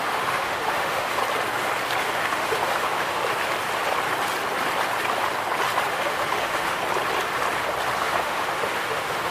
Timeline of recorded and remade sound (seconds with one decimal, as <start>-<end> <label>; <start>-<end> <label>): 0.0-1.2 remade; 1.2-2.0 recorded; 2.0-3.2 remade; 3.2-5.9 recorded; 5.9-6.8 remade; 6.8-8.0 recorded; 8.0-9.3 remade